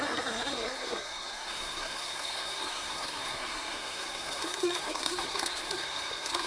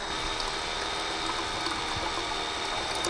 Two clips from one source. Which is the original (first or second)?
second